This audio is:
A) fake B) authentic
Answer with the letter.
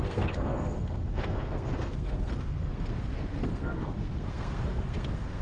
A